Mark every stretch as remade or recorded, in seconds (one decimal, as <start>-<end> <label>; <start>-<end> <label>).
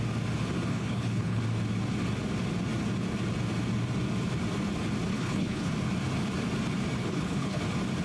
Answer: 0.0-0.7 recorded; 0.7-1.4 remade; 1.4-5.1 recorded; 5.1-5.7 remade; 5.7-7.0 recorded; 7.0-7.6 remade; 7.6-8.0 recorded